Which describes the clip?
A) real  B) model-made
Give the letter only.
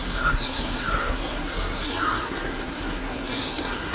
B